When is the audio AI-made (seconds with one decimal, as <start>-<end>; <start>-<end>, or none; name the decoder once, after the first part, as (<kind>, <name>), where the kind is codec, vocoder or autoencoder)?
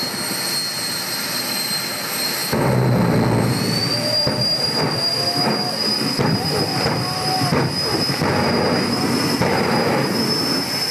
none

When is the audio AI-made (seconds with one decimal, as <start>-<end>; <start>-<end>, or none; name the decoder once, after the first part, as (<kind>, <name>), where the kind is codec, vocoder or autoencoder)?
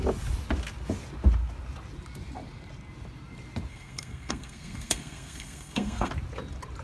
3.7-6.1 (codec, SNAC)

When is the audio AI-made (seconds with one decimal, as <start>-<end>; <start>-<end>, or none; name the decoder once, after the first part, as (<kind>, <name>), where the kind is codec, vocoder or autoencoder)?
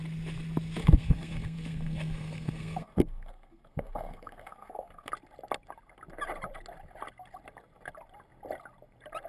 0.8-5.1 (codec, SNAC)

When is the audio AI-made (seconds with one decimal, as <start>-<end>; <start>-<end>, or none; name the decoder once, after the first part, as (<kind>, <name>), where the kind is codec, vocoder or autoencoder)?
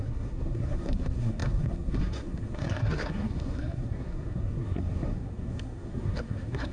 0.0-6.7 (codec, SNAC)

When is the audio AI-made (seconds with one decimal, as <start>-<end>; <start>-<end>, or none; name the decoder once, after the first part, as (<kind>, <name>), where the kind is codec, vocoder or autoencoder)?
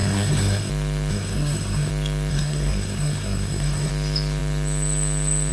0.0-0.7 (codec, SNAC); 1.1-1.9; 2.3-3.9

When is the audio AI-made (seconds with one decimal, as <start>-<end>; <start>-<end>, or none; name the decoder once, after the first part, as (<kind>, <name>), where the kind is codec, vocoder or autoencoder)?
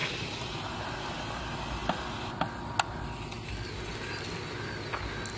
none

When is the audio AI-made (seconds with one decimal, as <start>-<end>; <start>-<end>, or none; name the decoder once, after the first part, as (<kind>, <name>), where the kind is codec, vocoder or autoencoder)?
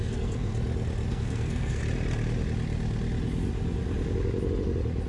0.0-0.5 (codec, SNAC); 1.1-1.8